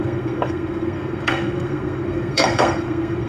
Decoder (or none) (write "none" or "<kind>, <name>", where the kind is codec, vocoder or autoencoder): codec, SNAC